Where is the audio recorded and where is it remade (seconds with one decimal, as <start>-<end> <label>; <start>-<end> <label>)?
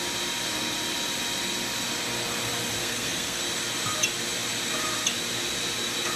0.0-2.8 recorded; 2.8-3.4 remade; 3.4-6.2 recorded